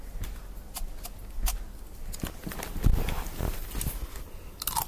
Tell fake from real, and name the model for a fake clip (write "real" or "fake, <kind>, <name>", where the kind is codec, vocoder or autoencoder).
real